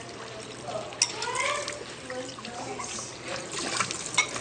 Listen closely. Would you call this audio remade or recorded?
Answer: recorded